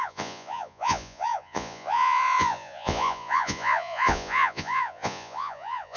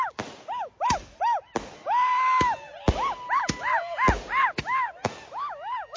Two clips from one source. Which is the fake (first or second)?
first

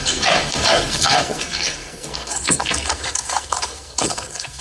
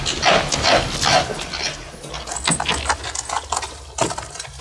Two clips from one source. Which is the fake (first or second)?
first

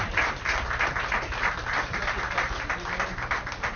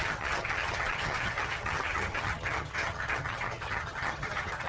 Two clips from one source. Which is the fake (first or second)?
second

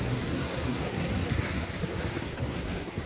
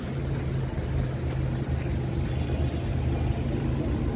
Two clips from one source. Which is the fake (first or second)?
first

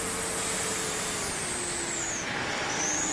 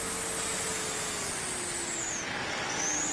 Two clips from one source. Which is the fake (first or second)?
first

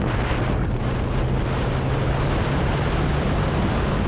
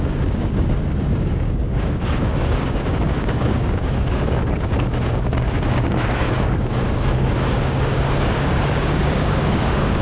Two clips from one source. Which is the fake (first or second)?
second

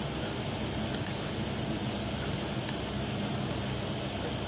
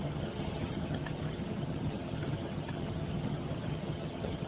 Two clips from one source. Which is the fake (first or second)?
second